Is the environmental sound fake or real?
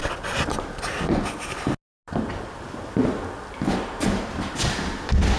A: real